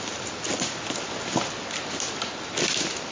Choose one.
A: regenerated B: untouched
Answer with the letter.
B